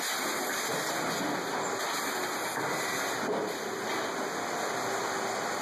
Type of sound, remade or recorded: recorded